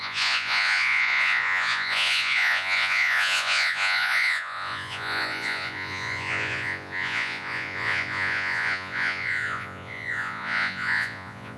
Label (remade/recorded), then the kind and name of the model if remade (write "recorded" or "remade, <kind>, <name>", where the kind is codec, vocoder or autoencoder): remade, vocoder, Vocos